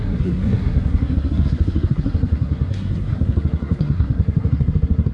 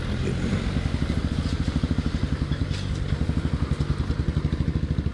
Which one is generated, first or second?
first